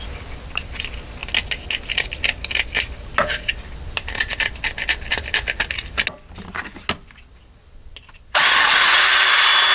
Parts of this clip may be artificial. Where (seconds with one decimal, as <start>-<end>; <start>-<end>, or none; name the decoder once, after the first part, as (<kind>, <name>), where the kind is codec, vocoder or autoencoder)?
none